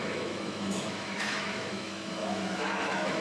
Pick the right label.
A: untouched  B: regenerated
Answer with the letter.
B